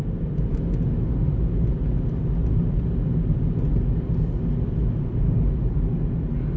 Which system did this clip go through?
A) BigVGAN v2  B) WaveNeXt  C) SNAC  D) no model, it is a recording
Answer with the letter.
D